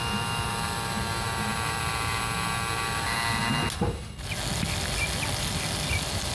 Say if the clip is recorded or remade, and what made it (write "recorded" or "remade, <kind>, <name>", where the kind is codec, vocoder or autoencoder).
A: recorded